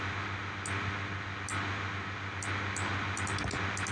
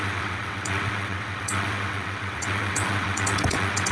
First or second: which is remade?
second